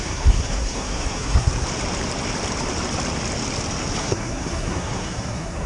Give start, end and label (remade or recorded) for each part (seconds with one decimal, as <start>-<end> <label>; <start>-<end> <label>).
0.0-1.5 remade; 1.5-4.0 recorded; 4.0-5.7 remade